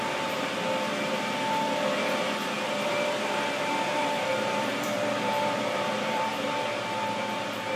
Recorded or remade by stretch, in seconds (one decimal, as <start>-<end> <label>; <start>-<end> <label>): 0.0-2.4 recorded; 2.4-6.3 remade; 6.3-7.8 recorded